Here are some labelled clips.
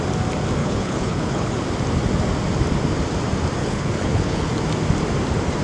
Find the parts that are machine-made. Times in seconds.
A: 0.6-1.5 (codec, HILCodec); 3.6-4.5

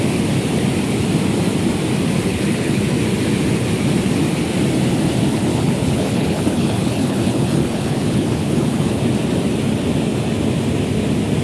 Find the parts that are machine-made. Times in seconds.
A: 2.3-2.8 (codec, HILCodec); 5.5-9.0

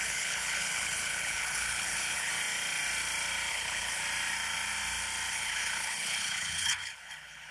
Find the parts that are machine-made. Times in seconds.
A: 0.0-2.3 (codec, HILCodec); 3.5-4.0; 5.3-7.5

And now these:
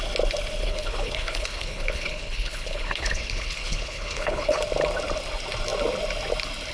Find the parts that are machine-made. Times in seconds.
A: 0.6-4.6 (codec, HILCodec)

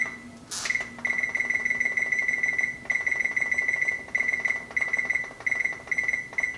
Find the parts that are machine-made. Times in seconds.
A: none

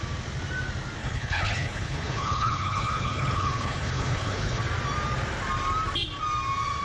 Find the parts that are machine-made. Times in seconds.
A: 1.0-4.6 (codec, HILCodec)